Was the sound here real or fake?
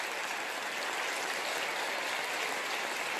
real